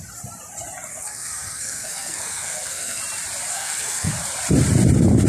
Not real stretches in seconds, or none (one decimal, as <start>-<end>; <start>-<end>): 0.9-3.0; 3.5-4.1